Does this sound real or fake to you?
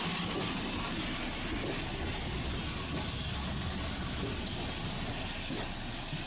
real